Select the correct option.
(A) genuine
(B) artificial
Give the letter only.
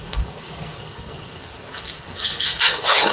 B